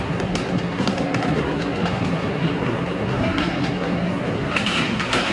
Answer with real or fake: fake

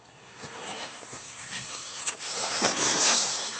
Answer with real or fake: fake